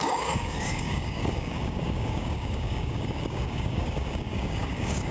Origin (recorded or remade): remade